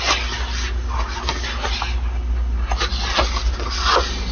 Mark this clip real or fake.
real